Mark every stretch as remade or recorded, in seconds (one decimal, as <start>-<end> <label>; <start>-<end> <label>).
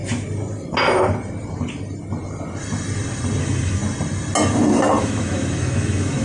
0.0-3.4 recorded; 3.4-3.8 remade; 3.8-5.0 recorded; 5.0-6.2 remade